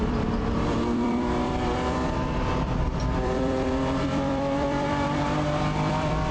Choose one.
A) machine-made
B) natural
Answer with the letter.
A